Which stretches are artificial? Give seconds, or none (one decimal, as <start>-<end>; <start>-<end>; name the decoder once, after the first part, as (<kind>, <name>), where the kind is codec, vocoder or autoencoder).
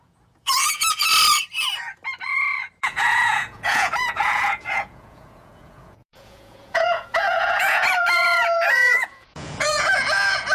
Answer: 0.0-1.1 (vocoder, Vocos); 2.8-10.5